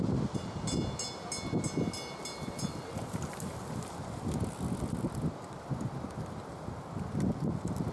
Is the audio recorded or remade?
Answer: recorded